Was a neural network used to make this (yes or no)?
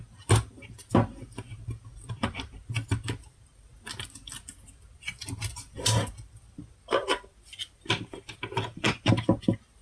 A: no